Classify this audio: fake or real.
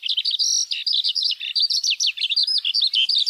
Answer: real